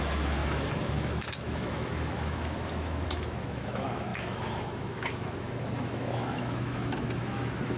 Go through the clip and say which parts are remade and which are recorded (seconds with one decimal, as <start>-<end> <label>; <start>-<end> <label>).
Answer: 0.0-7.8 remade